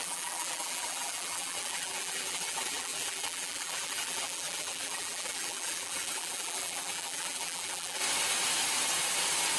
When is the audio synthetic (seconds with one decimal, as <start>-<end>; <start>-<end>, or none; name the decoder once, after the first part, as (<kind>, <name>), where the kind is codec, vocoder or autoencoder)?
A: 0.0-8.0 (vocoder, BigVGAN v2)